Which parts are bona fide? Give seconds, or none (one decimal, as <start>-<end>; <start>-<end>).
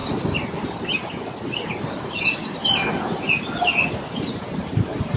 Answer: 0.9-5.2